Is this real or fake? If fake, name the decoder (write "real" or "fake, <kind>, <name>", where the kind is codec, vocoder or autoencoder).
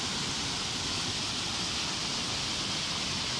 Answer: real